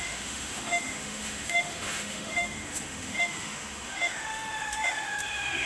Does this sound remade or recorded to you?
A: remade